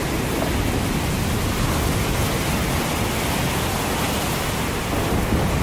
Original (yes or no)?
yes